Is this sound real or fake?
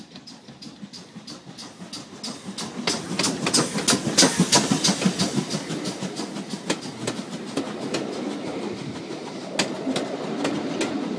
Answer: real